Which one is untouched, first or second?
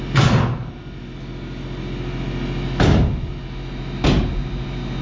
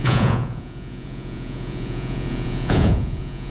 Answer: first